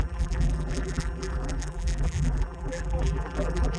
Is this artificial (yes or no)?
yes